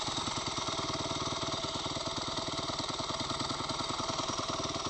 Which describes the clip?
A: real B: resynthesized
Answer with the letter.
B